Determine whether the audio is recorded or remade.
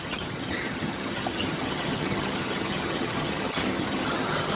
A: remade